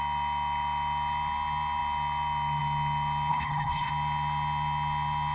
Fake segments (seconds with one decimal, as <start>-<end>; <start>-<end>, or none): 3.3-3.9